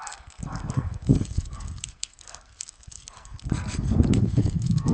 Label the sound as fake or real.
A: fake